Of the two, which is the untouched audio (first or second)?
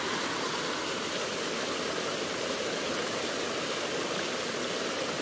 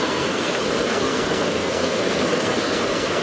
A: first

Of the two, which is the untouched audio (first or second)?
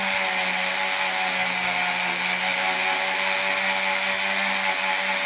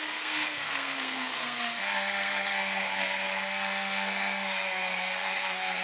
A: first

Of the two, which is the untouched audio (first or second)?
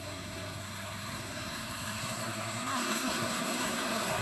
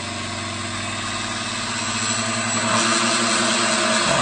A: second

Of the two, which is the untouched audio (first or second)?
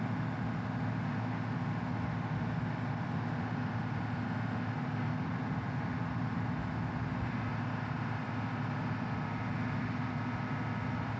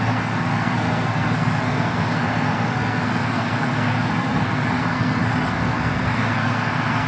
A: first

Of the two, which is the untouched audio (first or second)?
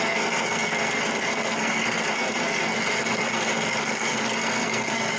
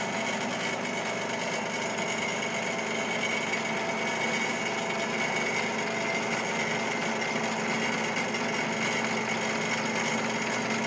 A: second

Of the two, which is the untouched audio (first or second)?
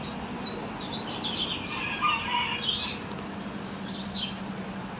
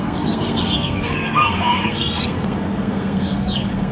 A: first